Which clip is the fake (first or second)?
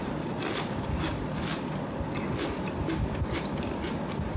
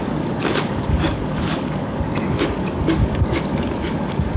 second